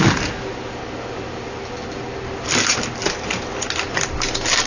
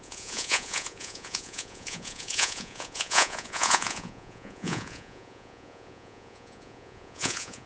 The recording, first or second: first